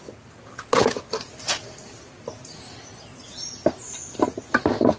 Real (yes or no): yes